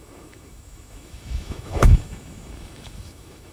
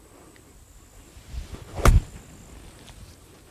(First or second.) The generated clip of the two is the first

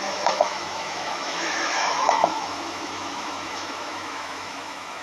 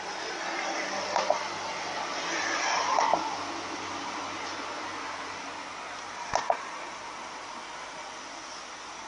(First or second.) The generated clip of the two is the first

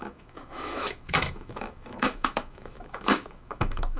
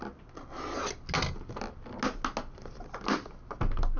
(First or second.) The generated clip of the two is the first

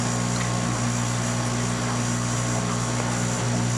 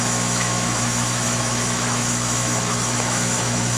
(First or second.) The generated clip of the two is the second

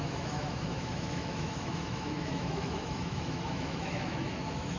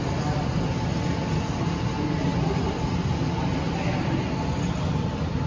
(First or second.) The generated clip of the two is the first